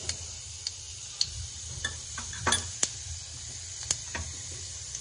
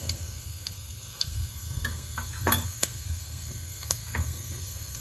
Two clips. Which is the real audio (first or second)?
first